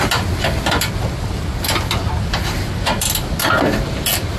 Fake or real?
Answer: real